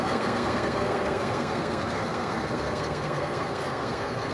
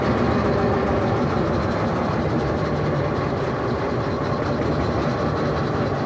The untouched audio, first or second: second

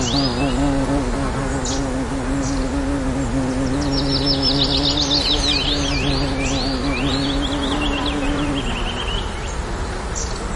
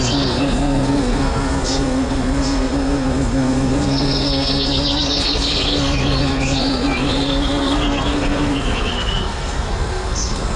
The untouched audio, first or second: first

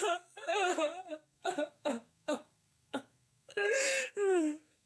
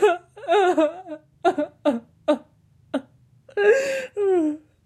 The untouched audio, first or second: second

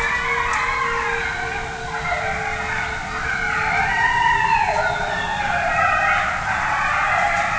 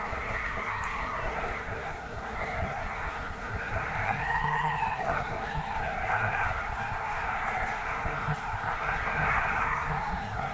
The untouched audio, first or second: first